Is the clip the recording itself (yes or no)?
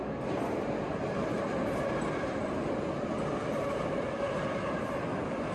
yes